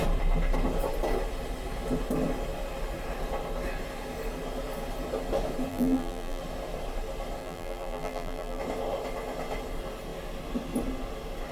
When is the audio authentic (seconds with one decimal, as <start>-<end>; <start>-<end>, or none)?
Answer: 0.0-5.7; 6.4-7.4; 8.6-11.5